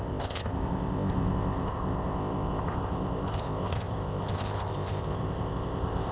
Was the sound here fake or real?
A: fake